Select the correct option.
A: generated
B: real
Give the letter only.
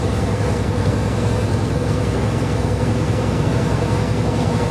A